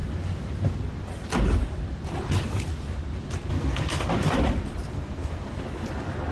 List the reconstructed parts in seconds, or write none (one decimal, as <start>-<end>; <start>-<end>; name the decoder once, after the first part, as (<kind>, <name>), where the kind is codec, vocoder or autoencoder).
3.5-4.1 (codec, SNAC); 4.9-5.6